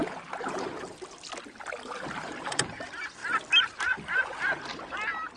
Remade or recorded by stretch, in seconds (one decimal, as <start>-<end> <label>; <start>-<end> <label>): 0.0-2.2 recorded; 2.2-3.2 remade; 3.2-5.4 recorded